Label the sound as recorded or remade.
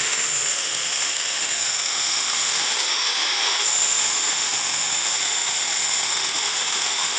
remade